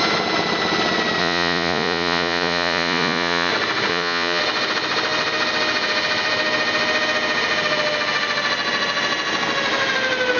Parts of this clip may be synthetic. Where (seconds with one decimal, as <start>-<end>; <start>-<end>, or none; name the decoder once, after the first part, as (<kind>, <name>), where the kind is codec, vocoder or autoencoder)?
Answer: 1.2-3.5 (vocoder, Vocos); 3.9-4.4